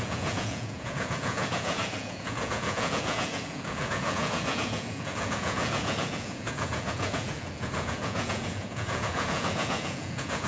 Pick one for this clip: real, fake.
fake